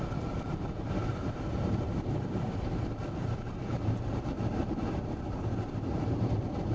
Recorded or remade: remade